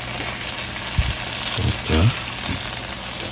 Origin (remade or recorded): recorded